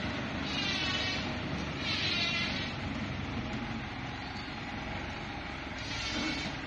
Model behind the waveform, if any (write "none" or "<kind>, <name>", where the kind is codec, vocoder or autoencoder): none